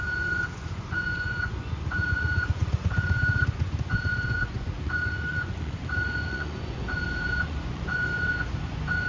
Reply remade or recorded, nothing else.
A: remade